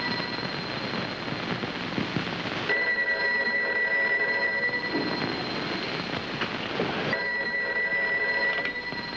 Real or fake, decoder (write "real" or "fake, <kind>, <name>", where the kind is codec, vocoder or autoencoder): real